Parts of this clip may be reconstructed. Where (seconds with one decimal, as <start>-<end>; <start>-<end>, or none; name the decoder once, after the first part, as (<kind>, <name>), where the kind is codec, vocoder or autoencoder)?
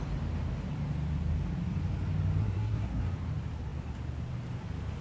2.4-3.0 (codec, SNAC)